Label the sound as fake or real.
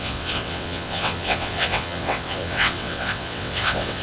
fake